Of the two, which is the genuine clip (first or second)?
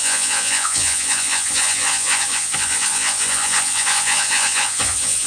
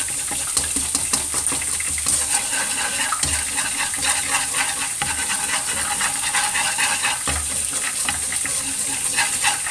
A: second